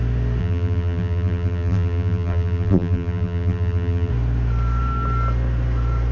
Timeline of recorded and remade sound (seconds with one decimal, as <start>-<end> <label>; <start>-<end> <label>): 0.0-0.4 recorded; 0.4-4.1 remade; 4.1-6.1 recorded